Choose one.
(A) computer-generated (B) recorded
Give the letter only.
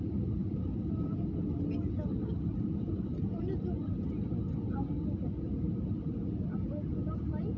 B